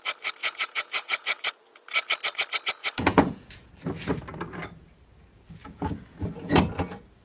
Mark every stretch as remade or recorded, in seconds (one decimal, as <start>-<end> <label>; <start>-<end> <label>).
0.0-0.4 recorded; 0.4-1.5 remade; 1.5-2.8 recorded; 2.8-3.7 remade; 3.7-5.6 recorded; 5.6-6.6 remade; 6.6-7.2 recorded